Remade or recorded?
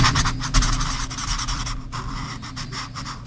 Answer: remade